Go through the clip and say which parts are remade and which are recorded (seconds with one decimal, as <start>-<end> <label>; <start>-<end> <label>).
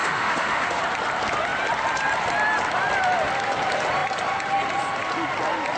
0.0-0.8 remade; 0.8-5.8 recorded